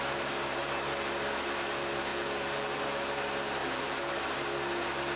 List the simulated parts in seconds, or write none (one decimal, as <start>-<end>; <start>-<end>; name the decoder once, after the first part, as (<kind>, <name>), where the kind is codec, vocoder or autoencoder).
2.1-2.8 (vocoder, BigVGAN v2); 3.6-4.1